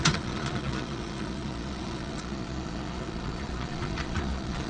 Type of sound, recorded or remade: remade